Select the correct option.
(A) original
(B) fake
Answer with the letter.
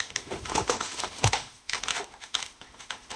B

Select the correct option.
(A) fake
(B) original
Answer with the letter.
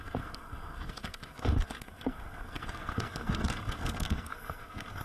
A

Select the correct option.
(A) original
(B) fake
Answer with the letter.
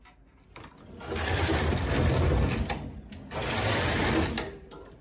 A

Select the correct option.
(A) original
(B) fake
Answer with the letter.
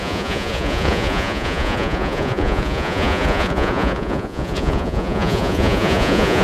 B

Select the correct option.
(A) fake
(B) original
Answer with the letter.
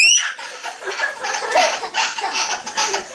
B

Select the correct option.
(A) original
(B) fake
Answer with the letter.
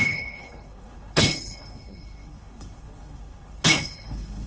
B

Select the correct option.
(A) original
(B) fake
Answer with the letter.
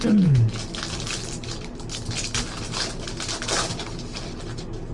A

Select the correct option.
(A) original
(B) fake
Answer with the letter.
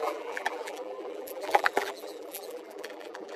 B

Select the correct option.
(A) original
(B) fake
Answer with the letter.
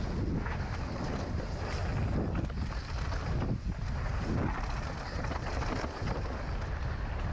A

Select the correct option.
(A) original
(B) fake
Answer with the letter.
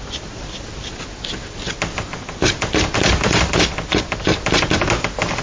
A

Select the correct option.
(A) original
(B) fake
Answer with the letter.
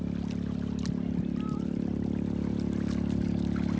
A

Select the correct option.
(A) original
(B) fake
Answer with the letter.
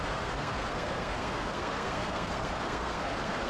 B